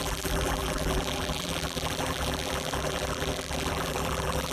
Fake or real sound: fake